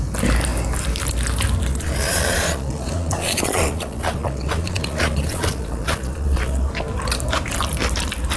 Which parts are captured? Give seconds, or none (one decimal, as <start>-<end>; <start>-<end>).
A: 0.0-1.7; 6.7-8.4